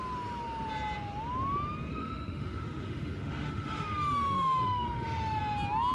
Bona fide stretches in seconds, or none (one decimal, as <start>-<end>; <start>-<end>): 0.0-1.9; 5.4-5.9